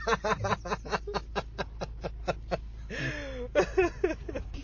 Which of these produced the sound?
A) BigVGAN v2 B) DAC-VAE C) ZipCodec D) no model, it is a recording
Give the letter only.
D